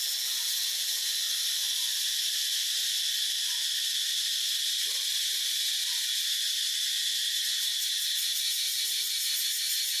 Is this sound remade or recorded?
recorded